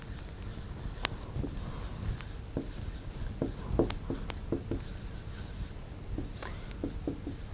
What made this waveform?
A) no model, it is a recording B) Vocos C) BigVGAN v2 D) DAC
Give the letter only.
A